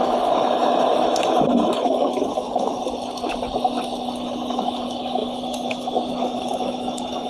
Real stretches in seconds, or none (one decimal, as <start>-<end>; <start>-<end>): 2.8-4.5